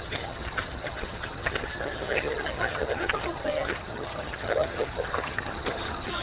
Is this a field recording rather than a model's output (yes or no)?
no